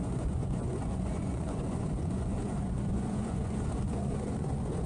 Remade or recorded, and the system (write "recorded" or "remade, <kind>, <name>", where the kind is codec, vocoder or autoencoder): remade, vocoder, Vocos